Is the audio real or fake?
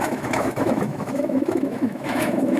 fake